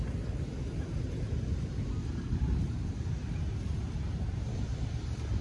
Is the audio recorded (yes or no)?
yes